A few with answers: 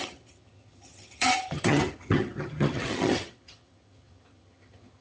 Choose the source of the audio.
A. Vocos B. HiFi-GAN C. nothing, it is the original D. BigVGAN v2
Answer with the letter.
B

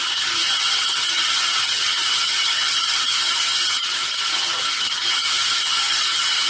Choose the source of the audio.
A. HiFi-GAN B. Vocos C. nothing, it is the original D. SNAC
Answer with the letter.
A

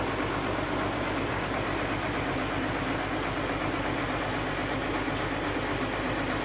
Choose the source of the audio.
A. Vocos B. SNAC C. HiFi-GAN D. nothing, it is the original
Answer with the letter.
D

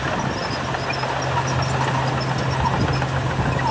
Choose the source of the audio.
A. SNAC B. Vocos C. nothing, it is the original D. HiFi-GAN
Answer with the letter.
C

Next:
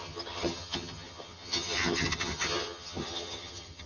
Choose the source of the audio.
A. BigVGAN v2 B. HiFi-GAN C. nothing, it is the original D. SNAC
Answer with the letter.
B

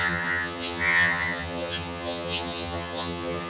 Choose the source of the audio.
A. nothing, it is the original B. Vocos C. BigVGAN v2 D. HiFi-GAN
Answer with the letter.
D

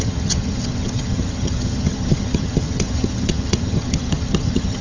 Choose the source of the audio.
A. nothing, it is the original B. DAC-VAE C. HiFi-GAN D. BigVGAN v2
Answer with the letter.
C